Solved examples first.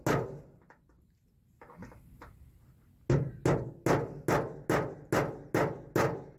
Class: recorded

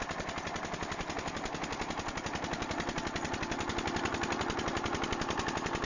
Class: recorded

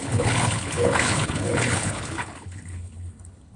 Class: remade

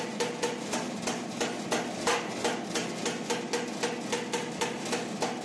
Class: recorded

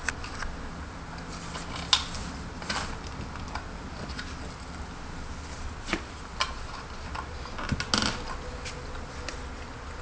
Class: recorded